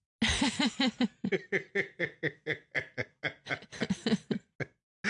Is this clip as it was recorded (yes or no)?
yes